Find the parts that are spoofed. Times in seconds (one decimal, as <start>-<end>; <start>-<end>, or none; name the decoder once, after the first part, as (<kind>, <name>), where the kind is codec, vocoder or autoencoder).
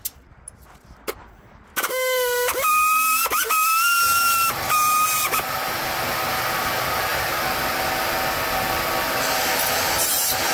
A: 1.7-2.7 (autoencoder, DAC-VAE)